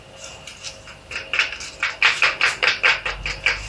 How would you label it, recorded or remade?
recorded